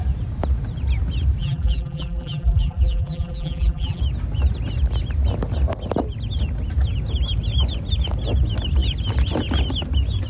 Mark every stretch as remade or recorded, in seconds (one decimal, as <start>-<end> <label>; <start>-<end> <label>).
0.0-1.4 recorded; 1.4-4.0 remade; 4.0-10.3 recorded